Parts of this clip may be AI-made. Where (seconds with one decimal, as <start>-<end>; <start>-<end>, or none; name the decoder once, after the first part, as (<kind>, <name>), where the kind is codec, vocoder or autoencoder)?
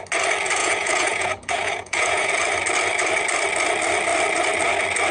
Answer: 0.6-2.3 (vocoder, Vocos)